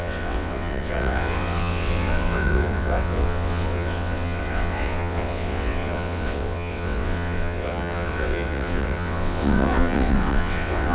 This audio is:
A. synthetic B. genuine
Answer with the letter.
A